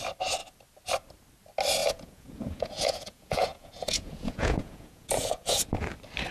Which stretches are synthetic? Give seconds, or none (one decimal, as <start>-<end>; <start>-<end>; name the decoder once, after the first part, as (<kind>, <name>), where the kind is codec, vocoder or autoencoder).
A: 1.8-5.6 (vocoder, Vocos)